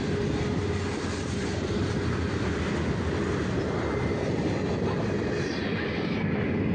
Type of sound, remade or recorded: recorded